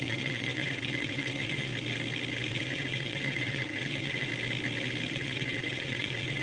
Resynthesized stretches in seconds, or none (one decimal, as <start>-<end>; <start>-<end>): 0.0-1.7; 2.5-4.3; 5.1-6.4